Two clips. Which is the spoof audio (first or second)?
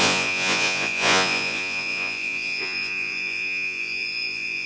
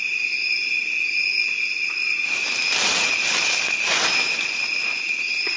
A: first